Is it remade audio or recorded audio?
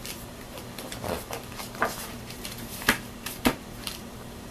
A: remade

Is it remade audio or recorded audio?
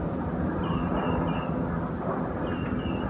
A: recorded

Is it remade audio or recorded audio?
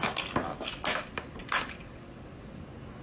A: recorded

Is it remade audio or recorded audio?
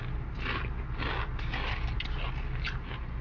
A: recorded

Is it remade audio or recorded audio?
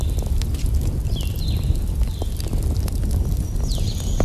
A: recorded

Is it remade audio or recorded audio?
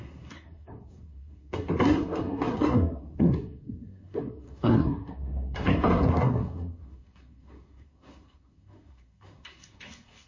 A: remade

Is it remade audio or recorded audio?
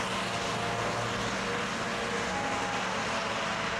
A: recorded